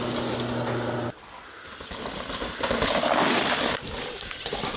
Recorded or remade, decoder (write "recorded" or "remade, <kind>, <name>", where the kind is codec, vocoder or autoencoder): recorded